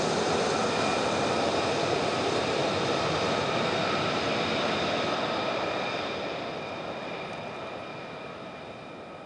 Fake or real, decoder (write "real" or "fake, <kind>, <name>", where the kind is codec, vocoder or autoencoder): real